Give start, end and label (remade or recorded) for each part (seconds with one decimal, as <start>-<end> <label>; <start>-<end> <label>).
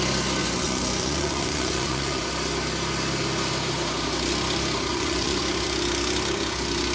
0.0-0.4 recorded; 0.4-2.3 remade; 2.3-4.9 recorded; 4.9-5.4 remade; 5.4-6.9 recorded